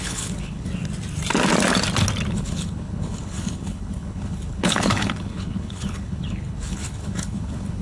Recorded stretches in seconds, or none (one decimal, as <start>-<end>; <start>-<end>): 0.7-2.3